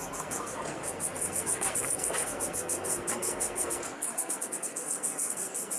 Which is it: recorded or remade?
remade